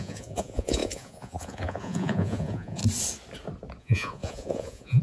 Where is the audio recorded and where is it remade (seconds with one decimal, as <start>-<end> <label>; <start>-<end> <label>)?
0.0-2.8 remade; 2.8-3.8 recorded; 3.8-5.0 remade